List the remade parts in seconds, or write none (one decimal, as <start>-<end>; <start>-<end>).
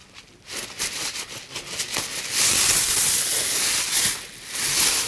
none